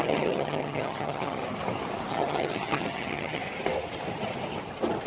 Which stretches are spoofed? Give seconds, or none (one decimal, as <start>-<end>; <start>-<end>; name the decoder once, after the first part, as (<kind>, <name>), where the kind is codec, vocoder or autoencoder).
0.0-1.4 (vocoder, HiFi-GAN); 2.1-3.4